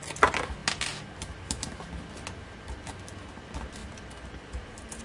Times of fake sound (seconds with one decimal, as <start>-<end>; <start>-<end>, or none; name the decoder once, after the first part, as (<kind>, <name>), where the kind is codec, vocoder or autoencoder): 3.8-5.0 (vocoder, BigVGAN v2)

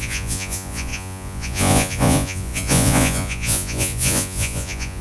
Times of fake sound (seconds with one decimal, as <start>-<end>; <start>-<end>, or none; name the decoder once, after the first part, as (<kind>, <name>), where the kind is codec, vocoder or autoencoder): 0.0-5.0 (vocoder, Vocos)

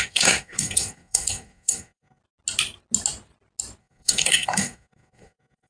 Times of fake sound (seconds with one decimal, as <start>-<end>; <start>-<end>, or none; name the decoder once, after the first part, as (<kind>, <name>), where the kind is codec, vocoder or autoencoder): 0.0-2.2 (codec, SNAC); 3.8-5.7

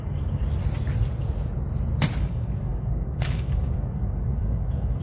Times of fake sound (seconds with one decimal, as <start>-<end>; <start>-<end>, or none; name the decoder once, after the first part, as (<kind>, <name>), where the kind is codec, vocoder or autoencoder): 0.0-0.4 (codec, DAC); 2.2-5.0